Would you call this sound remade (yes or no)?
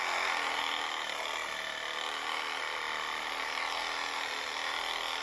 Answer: no